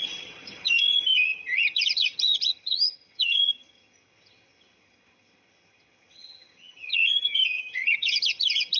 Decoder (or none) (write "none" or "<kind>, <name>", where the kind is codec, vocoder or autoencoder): vocoder, HiFi-GAN